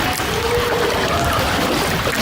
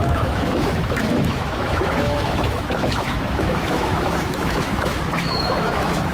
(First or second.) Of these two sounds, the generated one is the second